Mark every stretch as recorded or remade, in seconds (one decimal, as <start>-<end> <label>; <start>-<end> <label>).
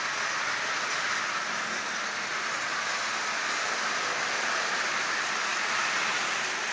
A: 0.0-6.7 recorded